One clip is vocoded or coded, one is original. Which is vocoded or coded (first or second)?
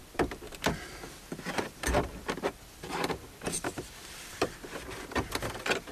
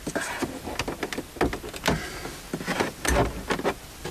first